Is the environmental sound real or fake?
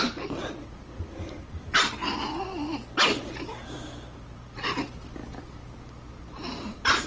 real